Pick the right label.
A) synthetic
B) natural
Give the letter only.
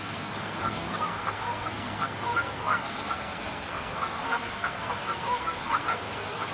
A